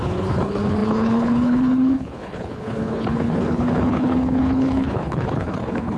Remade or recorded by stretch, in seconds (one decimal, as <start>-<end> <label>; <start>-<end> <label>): 0.0-6.0 remade